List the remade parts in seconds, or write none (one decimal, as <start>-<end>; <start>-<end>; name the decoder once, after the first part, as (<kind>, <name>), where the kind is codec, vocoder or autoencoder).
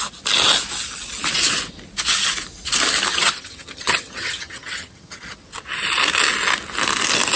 3.1-5.3 (vocoder, HiFi-GAN)